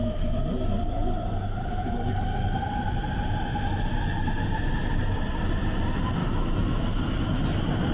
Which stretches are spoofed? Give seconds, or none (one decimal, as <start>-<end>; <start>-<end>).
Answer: 6.2-7.4